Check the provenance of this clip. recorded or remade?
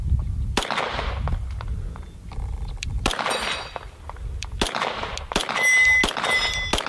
recorded